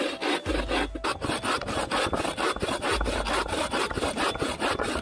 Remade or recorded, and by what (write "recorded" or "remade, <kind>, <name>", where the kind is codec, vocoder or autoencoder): recorded